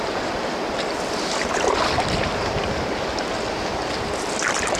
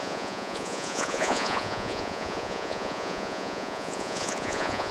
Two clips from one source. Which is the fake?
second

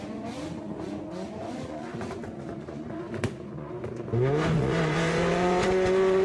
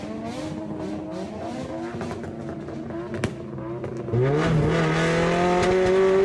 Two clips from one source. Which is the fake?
first